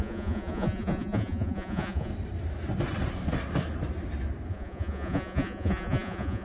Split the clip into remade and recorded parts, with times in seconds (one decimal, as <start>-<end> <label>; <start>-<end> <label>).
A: 0.0-2.1 remade; 2.1-4.5 recorded; 4.5-6.4 remade